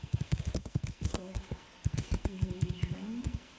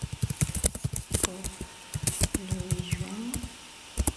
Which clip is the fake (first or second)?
first